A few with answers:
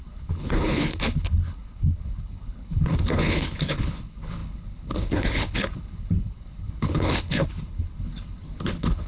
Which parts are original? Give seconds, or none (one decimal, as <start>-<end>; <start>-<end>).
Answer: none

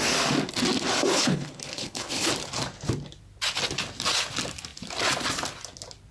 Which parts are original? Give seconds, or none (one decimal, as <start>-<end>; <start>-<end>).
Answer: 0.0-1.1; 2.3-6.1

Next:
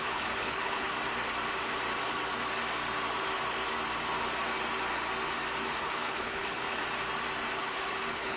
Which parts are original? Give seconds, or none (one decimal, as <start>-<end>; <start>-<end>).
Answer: 0.9-5.8; 6.8-7.6